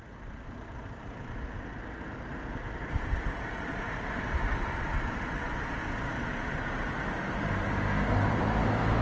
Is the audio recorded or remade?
recorded